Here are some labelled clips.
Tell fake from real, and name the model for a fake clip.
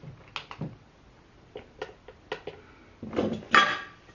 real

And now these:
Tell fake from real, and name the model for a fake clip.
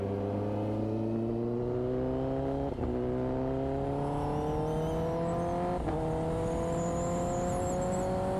real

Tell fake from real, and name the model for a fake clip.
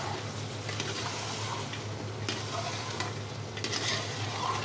real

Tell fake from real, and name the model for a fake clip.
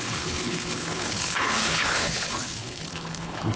fake, codec, HILCodec